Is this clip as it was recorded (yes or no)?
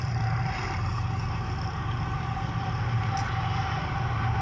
no